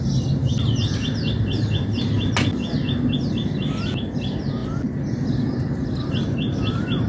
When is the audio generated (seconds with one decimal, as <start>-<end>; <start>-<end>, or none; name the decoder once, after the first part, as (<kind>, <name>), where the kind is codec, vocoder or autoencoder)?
none